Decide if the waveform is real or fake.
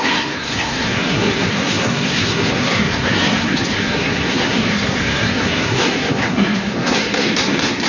fake